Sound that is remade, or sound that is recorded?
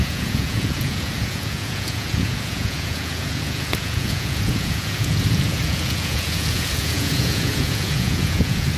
remade